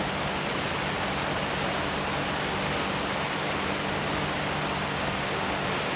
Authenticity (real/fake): real